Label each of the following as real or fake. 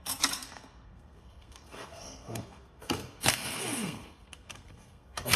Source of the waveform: fake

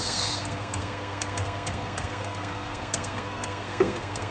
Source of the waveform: fake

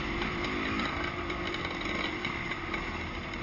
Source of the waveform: real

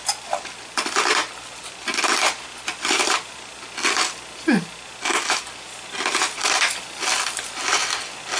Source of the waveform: real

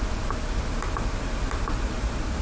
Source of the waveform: real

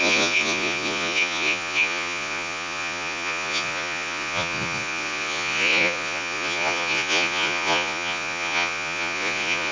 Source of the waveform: fake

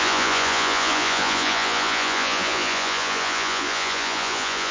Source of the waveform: fake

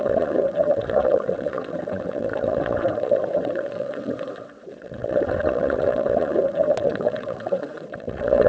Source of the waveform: fake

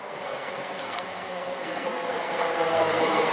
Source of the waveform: fake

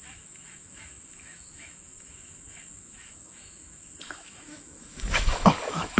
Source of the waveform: fake